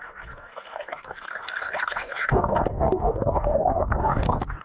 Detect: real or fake fake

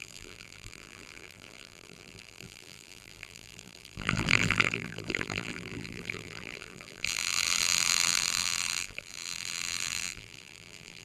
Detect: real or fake fake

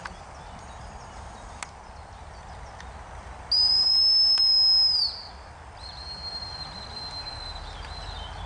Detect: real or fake real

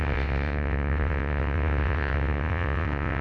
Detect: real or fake fake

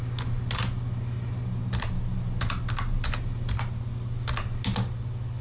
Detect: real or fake real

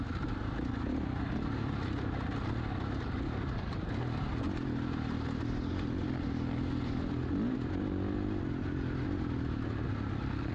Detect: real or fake real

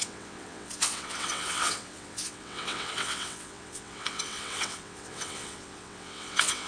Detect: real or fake fake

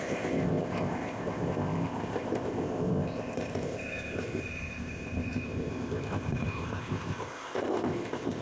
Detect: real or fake fake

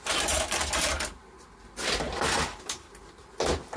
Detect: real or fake real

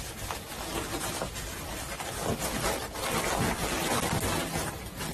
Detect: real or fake real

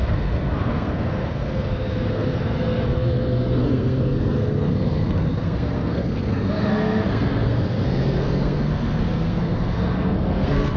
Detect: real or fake fake